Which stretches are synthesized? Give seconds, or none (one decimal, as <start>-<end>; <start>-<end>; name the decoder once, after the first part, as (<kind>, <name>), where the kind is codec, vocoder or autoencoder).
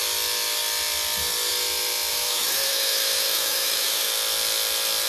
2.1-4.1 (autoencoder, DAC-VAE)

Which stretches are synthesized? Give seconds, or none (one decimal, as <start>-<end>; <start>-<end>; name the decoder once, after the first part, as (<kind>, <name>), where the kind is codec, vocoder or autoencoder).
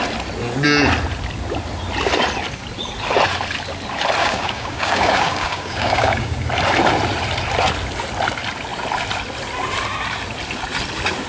4.2-6.5 (codec, DAC)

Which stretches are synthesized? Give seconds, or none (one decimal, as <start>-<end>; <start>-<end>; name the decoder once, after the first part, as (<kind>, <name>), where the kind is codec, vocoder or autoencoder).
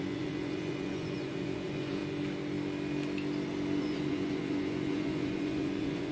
0.0-2.0 (vocoder, Vocos); 3.8-6.1